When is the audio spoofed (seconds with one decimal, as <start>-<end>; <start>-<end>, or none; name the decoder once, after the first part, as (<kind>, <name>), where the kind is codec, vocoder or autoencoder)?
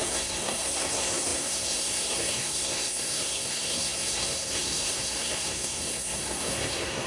0.0-7.1 (codec, SNAC)